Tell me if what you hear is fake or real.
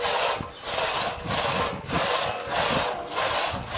real